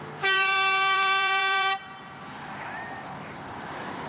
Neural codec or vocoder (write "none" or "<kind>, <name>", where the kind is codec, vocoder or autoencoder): vocoder, BigVGAN v2